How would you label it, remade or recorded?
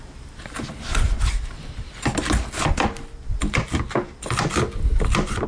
recorded